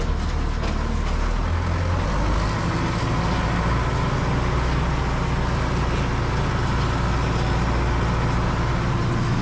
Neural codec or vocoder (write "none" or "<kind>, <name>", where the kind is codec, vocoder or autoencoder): none